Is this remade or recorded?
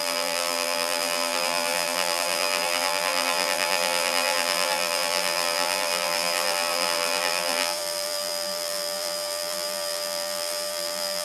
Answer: remade